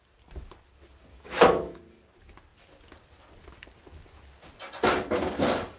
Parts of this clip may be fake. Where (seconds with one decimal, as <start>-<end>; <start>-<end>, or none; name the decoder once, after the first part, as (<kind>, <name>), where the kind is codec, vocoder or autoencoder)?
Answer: 1.1-1.8 (autoencoder, DAC-VAE)